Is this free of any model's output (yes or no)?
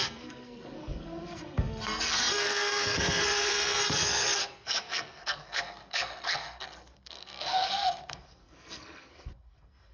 no